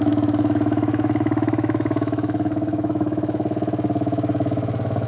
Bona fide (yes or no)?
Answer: no